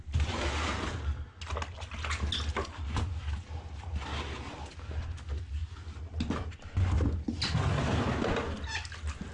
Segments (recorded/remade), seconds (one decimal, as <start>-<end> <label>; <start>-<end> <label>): 0.0-9.3 recorded